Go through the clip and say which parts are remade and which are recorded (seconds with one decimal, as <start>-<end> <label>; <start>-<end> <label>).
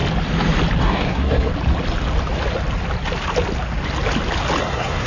0.0-0.8 recorded; 0.8-1.5 remade; 1.5-4.6 recorded; 4.6-5.1 remade